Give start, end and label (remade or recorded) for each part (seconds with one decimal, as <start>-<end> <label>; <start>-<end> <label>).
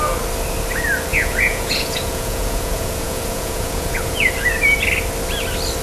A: 0.0-1.1 recorded; 1.1-4.3 remade; 4.3-5.8 recorded